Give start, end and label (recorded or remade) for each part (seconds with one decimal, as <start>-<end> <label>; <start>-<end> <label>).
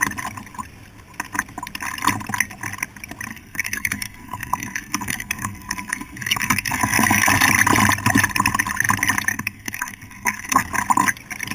0.0-3.3 recorded; 3.3-7.3 remade; 7.3-9.3 recorded; 9.3-10.7 remade; 10.7-11.5 recorded